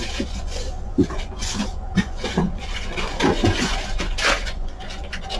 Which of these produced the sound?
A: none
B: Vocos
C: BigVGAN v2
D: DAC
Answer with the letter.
B